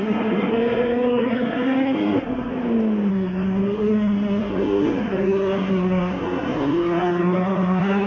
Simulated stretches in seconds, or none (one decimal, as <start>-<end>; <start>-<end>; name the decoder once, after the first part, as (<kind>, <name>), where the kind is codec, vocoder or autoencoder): 0.0-2.5 (codec, SNAC); 3.1-8.1